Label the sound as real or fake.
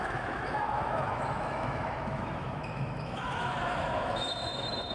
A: fake